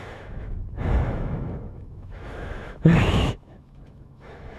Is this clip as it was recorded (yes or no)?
no